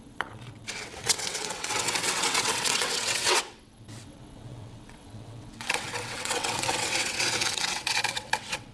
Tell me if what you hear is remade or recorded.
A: remade